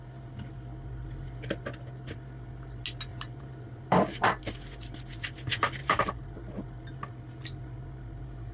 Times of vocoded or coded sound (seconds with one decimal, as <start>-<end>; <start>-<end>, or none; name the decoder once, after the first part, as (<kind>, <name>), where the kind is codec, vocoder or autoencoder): 3.1-4.3 (vocoder, BigVGAN v2); 5.8-6.6